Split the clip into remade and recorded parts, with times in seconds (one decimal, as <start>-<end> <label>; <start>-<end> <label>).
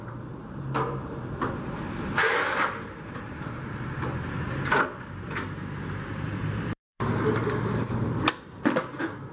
0.0-0.4 recorded; 0.4-1.5 remade; 1.5-2.2 recorded; 2.2-7.1 remade; 7.1-9.3 recorded